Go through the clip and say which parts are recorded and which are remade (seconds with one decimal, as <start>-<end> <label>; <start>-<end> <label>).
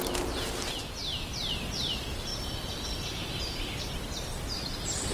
0.0-5.1 recorded